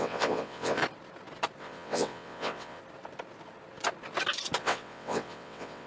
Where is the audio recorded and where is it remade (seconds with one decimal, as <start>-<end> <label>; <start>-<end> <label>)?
0.0-0.8 remade; 0.8-1.6 recorded; 1.6-2.8 remade; 2.8-4.6 recorded; 4.6-5.9 remade